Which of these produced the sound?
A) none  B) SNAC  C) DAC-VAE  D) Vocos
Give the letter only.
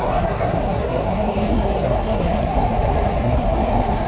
B